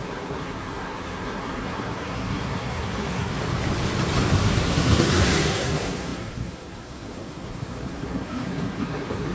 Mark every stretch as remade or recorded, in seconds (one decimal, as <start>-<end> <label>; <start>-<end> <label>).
0.0-3.3 remade; 3.3-4.3 recorded; 4.3-9.3 remade